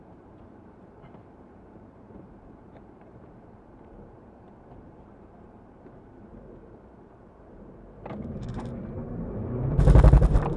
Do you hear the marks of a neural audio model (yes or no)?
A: yes